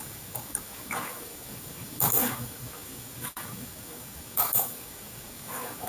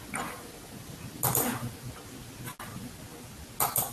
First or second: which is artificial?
first